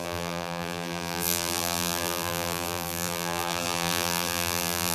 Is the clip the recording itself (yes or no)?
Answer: no